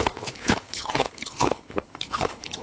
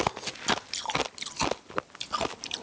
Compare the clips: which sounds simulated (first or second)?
first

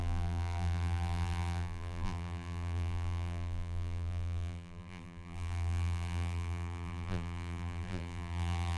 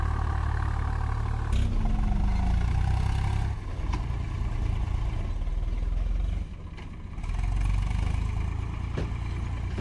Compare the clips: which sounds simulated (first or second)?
first